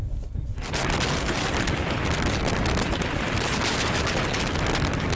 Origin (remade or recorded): recorded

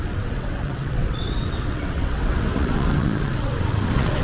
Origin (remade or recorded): remade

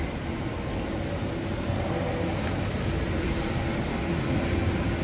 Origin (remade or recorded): recorded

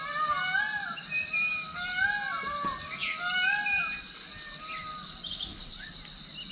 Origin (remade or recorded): recorded